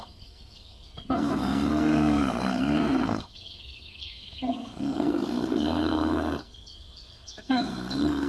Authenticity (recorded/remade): remade